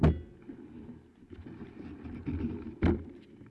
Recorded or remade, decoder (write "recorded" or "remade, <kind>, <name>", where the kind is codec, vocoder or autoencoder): recorded